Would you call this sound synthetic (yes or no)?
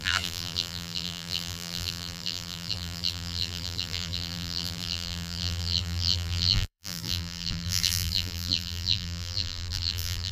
yes